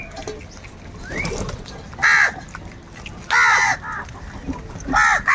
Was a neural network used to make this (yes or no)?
no